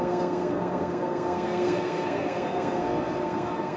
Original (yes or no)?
no